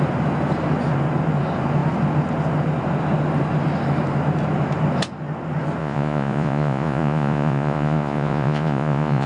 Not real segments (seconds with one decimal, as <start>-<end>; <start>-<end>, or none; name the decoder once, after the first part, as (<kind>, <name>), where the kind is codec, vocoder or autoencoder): 5.8-9.3 (vocoder, Vocos)